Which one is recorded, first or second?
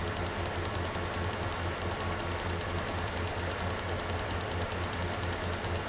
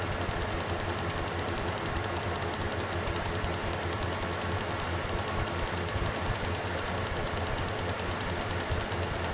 first